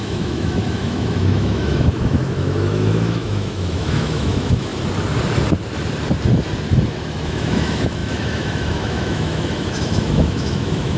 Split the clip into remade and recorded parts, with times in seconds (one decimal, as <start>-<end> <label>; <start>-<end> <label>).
0.0-4.7 remade; 4.7-6.9 recorded; 6.9-11.0 remade